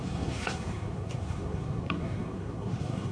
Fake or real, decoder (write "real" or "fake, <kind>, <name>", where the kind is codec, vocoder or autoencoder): fake, codec, SNAC